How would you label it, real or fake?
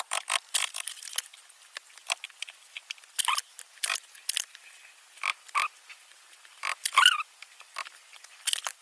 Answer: fake